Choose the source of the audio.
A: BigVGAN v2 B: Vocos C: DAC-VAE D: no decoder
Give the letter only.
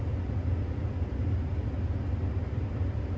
D